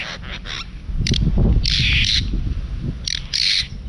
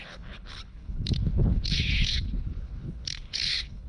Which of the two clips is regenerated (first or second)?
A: second